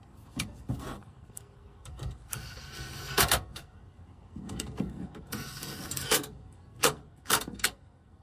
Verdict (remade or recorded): remade